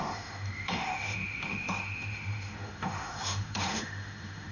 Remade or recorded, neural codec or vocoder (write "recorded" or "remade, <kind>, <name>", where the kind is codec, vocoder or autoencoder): remade, autoencoder, DAC-VAE